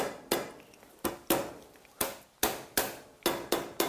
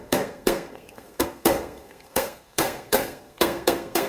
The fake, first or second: second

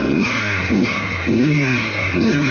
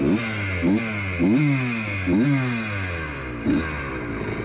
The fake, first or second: first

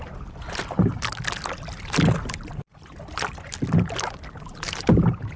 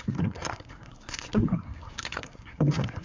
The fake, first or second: second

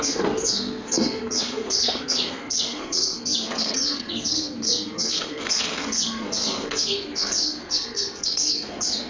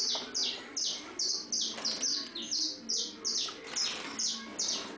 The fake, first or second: first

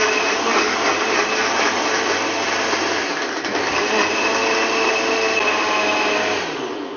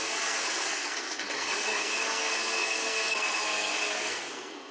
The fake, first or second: second